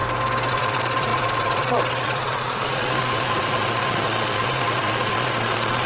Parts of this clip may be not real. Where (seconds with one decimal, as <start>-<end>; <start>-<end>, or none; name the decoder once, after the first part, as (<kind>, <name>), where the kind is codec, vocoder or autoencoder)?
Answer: 0.5-5.9 (vocoder, Vocos)